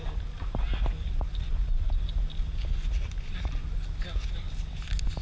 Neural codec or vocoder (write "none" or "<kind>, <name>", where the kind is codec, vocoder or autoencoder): none